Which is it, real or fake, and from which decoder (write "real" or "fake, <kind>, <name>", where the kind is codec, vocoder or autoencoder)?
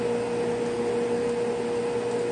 real